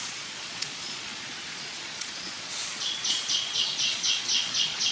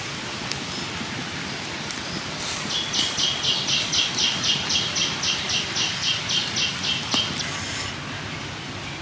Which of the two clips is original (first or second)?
second